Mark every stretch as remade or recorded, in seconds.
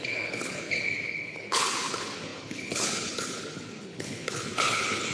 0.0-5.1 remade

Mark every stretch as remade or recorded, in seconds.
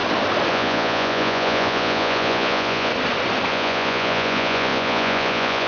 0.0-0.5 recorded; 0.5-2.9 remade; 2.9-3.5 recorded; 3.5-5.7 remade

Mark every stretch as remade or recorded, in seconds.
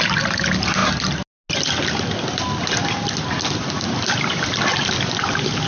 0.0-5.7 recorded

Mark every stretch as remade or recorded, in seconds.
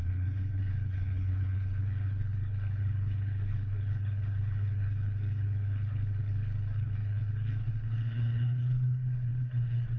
0.0-10.0 remade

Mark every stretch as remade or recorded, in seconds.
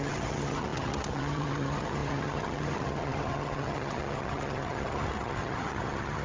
0.0-6.2 remade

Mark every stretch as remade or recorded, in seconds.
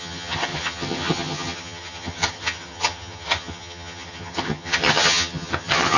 0.0-6.0 remade